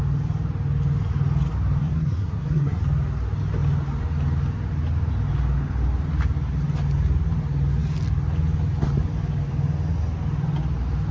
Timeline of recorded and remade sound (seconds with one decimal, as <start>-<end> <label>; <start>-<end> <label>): 0.0-1.8 recorded; 1.8-2.8 remade; 2.8-11.1 recorded